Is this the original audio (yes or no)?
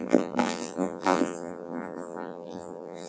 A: no